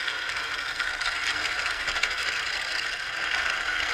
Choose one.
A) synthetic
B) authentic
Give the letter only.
A